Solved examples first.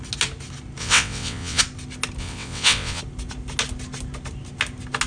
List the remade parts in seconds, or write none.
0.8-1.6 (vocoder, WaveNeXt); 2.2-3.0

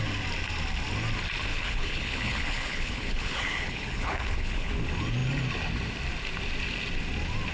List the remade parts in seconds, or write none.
1.5-4.7 (codec, HILCodec)

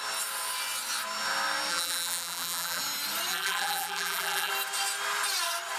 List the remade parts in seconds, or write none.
1.7-2.8 (vocoder, BigVGAN v2); 3.3-4.5

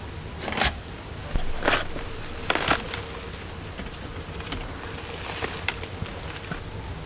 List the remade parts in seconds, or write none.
none